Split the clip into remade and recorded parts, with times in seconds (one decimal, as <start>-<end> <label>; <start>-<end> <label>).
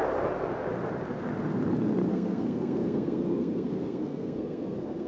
0.0-2.1 recorded; 2.1-5.1 remade